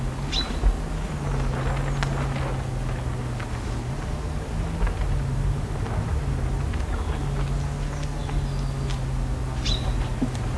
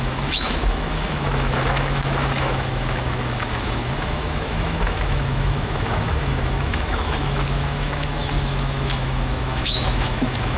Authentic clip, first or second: first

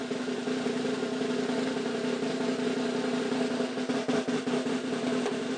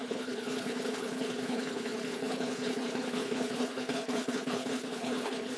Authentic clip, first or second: first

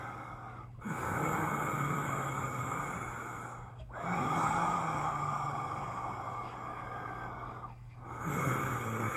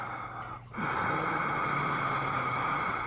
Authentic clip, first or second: second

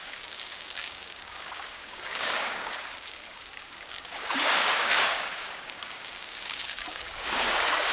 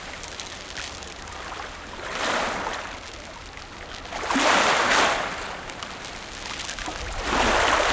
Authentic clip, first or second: second